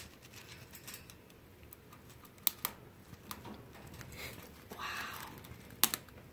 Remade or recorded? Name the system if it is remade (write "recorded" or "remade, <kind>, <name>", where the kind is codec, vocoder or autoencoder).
recorded